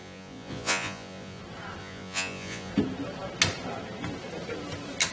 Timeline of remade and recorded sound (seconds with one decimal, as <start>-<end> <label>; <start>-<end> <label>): 0.0-1.4 remade; 1.4-1.8 recorded; 1.8-2.7 remade; 2.7-5.1 recorded